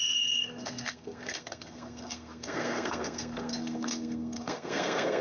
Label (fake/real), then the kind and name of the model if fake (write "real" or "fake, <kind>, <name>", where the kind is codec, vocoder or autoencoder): fake, codec, SNAC